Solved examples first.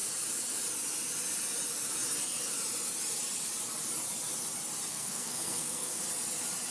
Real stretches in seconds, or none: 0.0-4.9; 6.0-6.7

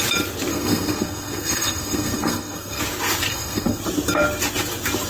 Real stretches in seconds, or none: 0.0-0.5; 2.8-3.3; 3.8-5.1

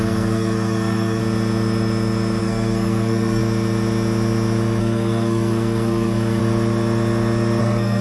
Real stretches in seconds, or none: 1.2-2.4; 3.4-4.8; 6.4-7.6

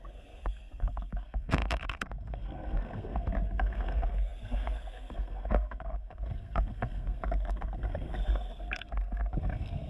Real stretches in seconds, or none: none

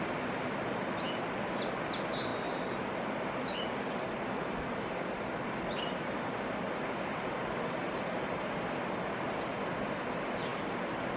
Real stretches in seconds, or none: 0.0-11.2

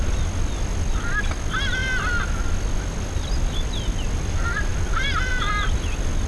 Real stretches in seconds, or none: 0.0-6.3